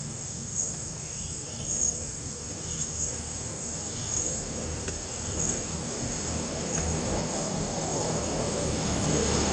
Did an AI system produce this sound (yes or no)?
yes